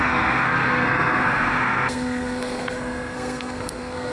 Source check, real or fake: fake